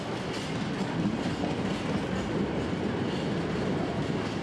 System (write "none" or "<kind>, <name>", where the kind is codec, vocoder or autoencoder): none